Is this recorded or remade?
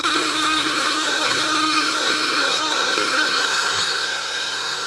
remade